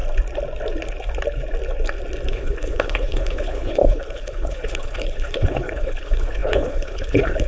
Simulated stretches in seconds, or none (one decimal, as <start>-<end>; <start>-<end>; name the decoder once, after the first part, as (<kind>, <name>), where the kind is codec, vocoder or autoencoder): 2.3-7.5 (codec, HILCodec)